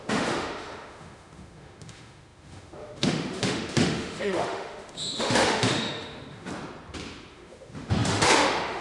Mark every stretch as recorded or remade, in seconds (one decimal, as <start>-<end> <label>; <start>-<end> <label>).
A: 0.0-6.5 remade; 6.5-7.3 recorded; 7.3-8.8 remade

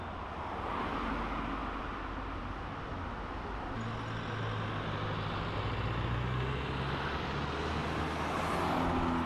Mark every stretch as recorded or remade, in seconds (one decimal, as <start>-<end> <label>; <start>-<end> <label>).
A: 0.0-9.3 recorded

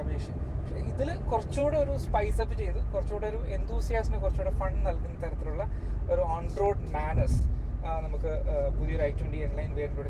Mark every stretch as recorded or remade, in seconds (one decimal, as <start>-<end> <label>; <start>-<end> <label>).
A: 0.0-1.6 recorded; 1.6-2.4 remade; 2.4-10.1 recorded